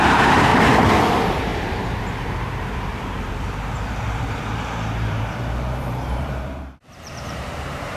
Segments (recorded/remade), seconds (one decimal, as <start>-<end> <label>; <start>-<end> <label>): 0.0-0.5 remade; 0.5-1.1 recorded; 1.1-8.0 remade